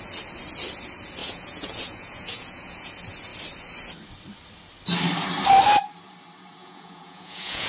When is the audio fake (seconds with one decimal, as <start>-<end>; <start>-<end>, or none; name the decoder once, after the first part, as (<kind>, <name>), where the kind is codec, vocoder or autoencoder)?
1.2-2.9 (vocoder, Vocos); 6.6-7.7